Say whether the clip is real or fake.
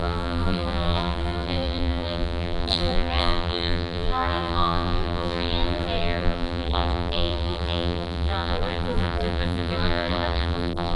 fake